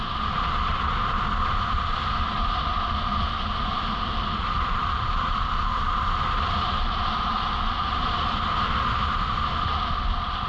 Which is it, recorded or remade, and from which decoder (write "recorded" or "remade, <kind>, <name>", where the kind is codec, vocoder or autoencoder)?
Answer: recorded